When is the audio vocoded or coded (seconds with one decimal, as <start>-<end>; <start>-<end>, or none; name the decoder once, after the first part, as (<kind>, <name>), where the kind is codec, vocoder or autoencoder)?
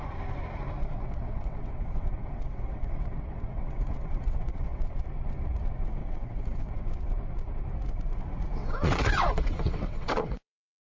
0.8-5.0 (vocoder, WaveNeXt); 6.0-6.9; 8.6-10.8